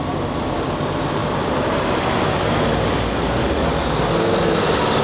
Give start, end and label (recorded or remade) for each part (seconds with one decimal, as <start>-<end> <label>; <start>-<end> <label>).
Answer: 0.0-5.0 recorded